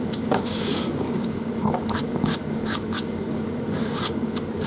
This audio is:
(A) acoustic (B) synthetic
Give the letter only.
B